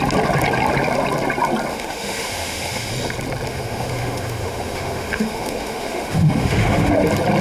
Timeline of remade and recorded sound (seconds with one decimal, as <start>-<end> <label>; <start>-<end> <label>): 0.0-1.7 recorded; 1.7-2.9 remade; 2.9-3.5 recorded; 3.5-6.9 remade; 6.9-7.4 recorded